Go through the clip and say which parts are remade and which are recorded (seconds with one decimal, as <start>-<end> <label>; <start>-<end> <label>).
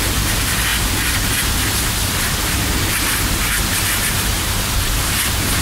0.0-0.7 remade; 0.7-4.1 recorded; 4.1-5.6 remade